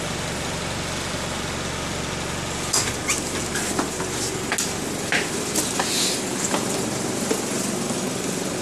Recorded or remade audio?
recorded